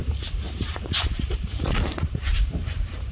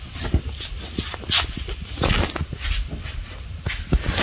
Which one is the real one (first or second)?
second